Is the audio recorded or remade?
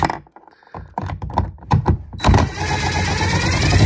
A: recorded